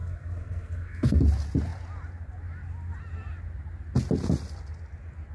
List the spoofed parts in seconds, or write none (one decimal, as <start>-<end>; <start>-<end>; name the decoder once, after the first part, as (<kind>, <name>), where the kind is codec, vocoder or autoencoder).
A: 0.0-1.2 (codec, SNAC)